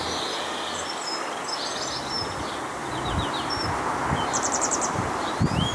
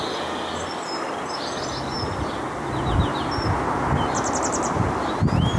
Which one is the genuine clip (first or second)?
second